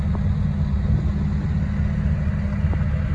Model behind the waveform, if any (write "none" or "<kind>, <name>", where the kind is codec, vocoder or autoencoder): none